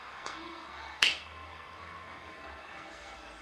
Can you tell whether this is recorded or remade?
remade